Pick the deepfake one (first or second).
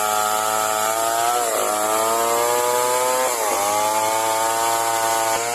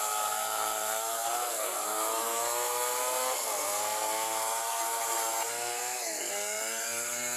second